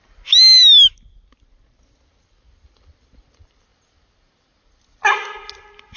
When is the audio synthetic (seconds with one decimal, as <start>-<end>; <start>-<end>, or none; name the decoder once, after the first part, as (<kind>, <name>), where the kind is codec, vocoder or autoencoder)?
none